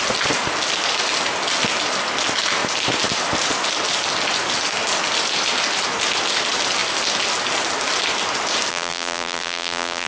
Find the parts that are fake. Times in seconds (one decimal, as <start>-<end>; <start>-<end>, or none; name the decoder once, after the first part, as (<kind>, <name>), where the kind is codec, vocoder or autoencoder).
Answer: 8.7-10.1 (vocoder, BigVGAN v2)